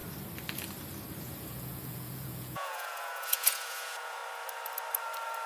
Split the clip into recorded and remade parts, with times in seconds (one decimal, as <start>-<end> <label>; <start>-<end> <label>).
0.0-1.2 recorded; 1.2-4.2 remade; 4.2-5.5 recorded